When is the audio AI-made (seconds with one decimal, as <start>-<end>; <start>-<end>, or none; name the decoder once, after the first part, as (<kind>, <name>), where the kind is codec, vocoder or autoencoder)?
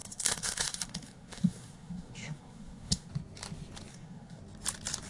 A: 0.0-3.1 (codec, SNAC); 3.9-4.4